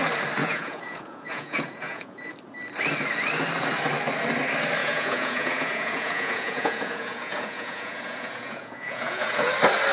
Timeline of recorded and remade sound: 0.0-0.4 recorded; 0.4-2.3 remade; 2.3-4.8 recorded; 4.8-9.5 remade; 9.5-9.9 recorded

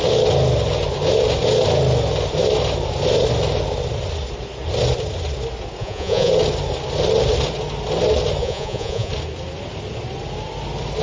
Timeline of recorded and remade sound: 0.0-5.8 recorded; 5.8-6.3 remade; 6.3-8.4 recorded; 8.4-9.1 remade; 9.1-11.0 recorded

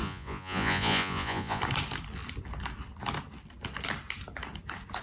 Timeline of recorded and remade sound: 0.0-1.6 remade; 1.6-5.0 recorded

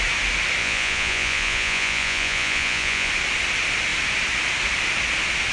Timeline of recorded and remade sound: 0.0-0.6 recorded; 0.6-3.1 remade; 3.1-5.5 recorded

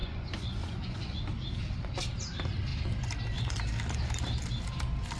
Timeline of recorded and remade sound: 0.0-1.2 remade; 1.2-5.2 recorded